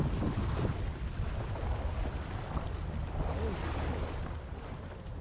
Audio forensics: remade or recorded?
recorded